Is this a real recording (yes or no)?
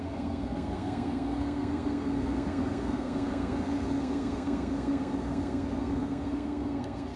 no